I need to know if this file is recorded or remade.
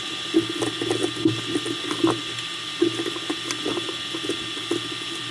recorded